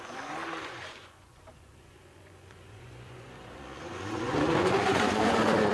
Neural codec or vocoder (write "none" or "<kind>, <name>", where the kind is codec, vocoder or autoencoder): vocoder, Vocos